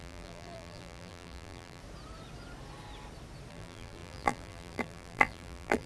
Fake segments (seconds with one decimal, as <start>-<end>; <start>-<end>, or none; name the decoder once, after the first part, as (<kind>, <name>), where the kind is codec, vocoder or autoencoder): 0.0-1.8 (vocoder, BigVGAN v2); 3.5-5.9